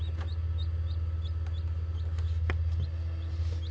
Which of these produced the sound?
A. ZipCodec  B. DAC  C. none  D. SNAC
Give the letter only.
C